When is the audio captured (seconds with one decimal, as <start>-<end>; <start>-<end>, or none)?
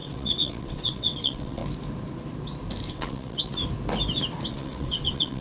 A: 1.6-2.9; 3.6-4.5